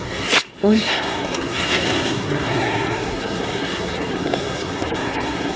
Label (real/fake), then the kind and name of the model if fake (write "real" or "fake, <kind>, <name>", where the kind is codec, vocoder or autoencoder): fake, codec, SNAC